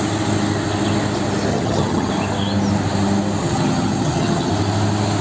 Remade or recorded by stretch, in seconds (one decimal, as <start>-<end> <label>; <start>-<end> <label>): 0.0-1.5 recorded; 1.5-2.1 remade; 2.1-3.4 recorded; 3.4-4.5 remade; 4.5-5.2 recorded